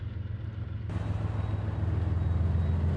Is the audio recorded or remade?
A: recorded